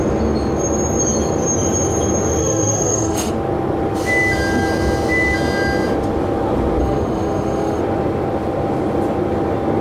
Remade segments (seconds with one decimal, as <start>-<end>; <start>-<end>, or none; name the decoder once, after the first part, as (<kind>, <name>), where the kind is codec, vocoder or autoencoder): 2.4-3.3 (autoencoder, DAC-VAE); 6.8-7.8